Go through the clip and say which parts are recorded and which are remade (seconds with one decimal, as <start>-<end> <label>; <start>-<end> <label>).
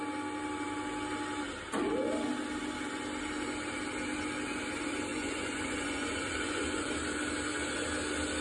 0.0-5.1 recorded; 5.1-6.9 remade; 6.9-8.4 recorded